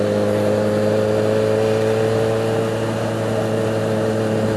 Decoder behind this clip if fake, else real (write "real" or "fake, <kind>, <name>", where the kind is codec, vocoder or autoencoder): real